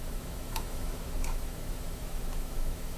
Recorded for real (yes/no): no